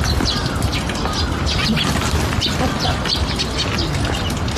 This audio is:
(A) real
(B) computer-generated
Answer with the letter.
A